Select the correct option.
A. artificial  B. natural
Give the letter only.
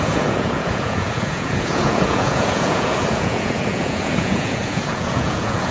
A